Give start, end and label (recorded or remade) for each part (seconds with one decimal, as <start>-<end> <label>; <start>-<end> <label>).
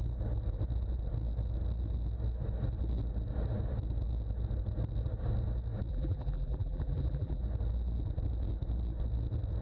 0.0-5.9 recorded; 5.9-7.4 remade; 7.4-9.6 recorded